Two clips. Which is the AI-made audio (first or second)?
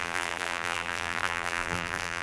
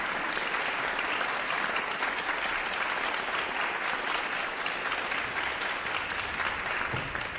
first